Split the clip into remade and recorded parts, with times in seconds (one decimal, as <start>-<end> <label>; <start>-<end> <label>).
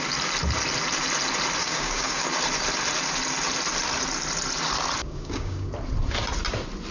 0.0-1.6 recorded; 1.6-2.2 remade; 2.2-5.0 recorded; 5.0-5.7 remade; 5.7-6.9 recorded